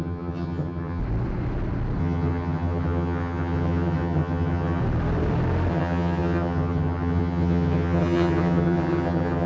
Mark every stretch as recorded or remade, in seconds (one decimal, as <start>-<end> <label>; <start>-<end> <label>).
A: 0.0-1.0 remade; 1.0-2.0 recorded; 2.0-4.8 remade; 4.8-5.7 recorded; 5.7-9.5 remade